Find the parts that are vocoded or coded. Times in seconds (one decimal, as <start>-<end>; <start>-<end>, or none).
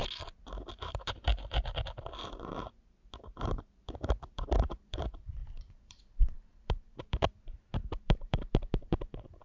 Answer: 0.7-1.3; 3.3-9.4